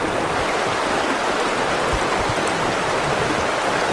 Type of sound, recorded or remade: recorded